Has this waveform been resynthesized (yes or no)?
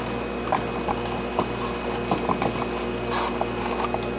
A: no